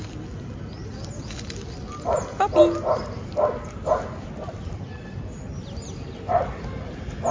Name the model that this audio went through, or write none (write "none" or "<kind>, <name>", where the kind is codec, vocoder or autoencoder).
none